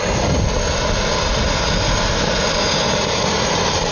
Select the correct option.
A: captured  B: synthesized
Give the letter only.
A